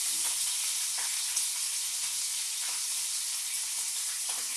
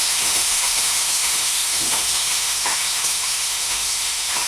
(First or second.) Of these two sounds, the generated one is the second